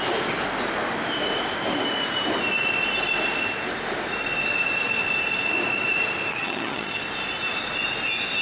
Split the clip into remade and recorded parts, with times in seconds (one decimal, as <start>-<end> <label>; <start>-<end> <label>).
0.0-6.4 recorded; 6.4-7.0 remade; 7.0-8.4 recorded